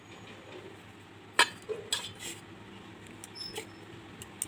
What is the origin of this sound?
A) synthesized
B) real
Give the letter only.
B